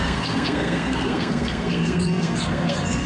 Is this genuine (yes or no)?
no